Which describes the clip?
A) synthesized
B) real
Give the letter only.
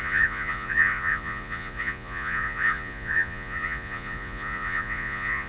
A